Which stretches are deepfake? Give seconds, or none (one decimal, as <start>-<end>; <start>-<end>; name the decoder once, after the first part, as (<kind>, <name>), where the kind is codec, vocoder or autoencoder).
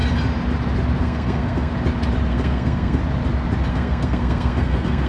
1.0-1.7 (codec, SNAC); 2.3-3.0; 3.7-5.1